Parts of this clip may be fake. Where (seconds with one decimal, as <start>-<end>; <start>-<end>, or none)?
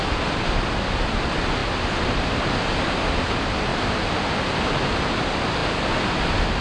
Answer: 3.7-5.1